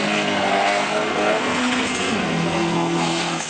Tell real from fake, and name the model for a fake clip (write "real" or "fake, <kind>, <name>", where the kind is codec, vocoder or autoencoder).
fake, codec, SNAC